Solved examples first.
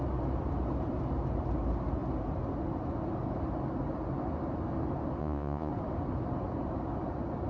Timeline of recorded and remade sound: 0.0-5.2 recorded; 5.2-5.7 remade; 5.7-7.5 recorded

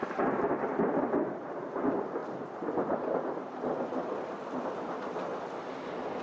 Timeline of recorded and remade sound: 0.0-0.7 remade; 0.7-1.7 recorded; 1.7-2.2 remade; 2.2-6.2 recorded